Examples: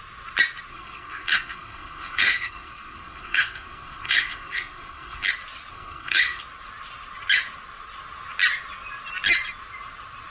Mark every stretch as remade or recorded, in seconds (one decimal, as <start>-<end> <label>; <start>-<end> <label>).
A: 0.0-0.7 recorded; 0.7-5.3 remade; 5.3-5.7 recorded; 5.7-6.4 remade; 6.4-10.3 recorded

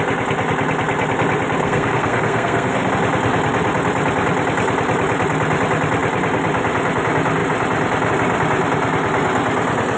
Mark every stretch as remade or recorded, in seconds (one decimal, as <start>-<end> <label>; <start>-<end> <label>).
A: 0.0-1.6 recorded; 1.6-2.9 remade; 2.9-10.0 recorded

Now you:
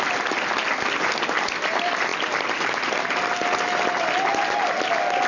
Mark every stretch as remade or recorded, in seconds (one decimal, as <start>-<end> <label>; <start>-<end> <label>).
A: 0.0-5.3 recorded

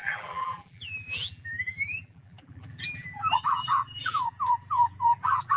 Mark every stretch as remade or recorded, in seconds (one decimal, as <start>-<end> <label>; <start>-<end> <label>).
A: 0.0-5.6 remade

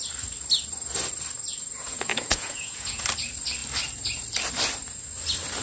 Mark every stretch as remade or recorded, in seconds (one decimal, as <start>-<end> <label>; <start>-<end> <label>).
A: 0.0-1.5 recorded; 1.5-3.0 remade; 3.0-5.6 recorded

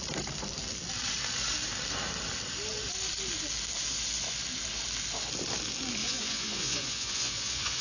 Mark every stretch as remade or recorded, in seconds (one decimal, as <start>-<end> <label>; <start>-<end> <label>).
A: 0.0-6.0 recorded; 6.0-7.8 remade